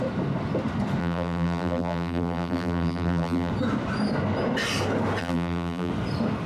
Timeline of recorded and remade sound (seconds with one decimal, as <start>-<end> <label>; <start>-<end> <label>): 0.0-1.0 recorded; 1.0-3.5 remade; 3.5-5.2 recorded; 5.2-5.9 remade; 5.9-6.5 recorded